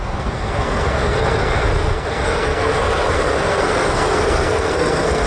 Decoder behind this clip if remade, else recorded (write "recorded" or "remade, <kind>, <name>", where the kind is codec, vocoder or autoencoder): remade, codec, SNAC